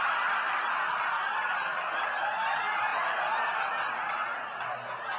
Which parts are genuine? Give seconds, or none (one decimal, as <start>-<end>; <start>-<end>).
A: 0.0-5.2